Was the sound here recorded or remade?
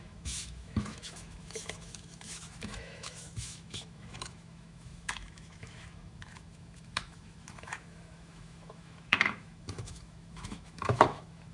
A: remade